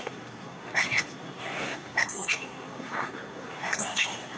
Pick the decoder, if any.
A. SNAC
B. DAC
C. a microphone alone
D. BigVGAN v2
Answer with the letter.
A